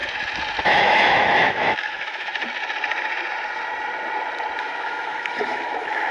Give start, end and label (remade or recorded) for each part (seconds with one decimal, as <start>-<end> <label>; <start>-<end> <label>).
0.0-0.6 recorded; 0.6-2.3 remade; 2.3-4.6 recorded; 4.6-6.1 remade